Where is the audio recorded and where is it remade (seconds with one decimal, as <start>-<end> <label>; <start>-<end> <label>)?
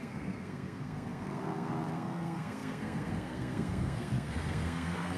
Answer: 0.0-5.2 remade